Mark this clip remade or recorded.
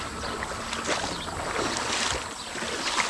recorded